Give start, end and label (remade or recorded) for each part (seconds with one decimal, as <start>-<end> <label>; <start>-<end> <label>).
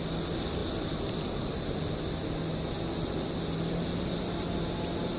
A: 0.0-5.2 recorded